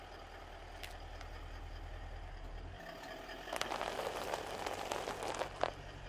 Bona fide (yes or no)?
yes